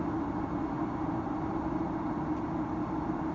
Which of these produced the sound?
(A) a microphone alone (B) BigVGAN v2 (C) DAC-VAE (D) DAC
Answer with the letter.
A